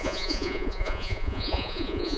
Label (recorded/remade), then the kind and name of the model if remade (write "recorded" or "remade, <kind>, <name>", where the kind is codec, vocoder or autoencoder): remade, vocoder, Vocos